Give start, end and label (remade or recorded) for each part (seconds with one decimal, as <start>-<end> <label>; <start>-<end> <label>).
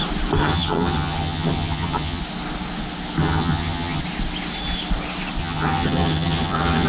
0.0-0.4 recorded; 0.4-2.2 remade; 2.2-3.2 recorded; 3.2-4.0 remade; 4.0-5.4 recorded; 5.4-6.9 remade